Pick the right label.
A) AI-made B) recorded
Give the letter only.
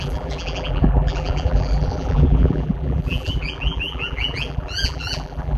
A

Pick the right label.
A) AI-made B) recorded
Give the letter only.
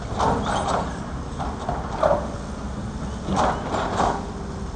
B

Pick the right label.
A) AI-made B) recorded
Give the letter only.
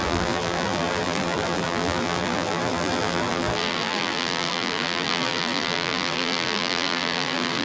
A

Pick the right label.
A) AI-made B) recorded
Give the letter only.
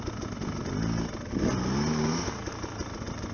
B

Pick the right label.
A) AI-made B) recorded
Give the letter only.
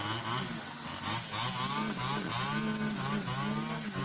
B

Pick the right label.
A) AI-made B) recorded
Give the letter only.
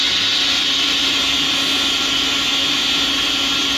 B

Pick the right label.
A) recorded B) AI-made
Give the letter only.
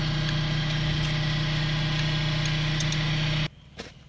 A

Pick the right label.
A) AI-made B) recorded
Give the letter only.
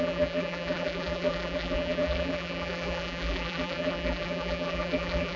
A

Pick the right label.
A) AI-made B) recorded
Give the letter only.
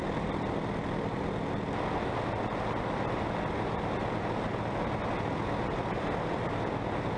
B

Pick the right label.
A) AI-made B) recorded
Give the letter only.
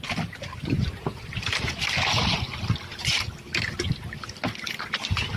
B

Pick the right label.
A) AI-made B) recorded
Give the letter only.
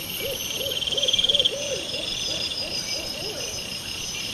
A